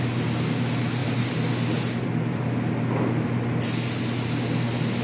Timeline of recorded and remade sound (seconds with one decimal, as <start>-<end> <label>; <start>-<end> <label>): 0.0-1.0 recorded; 1.0-2.4 remade; 2.4-5.0 recorded